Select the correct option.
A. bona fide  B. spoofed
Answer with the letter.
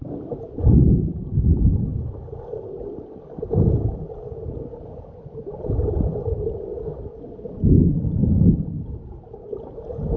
A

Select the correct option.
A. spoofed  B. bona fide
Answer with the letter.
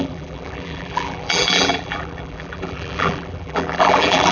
A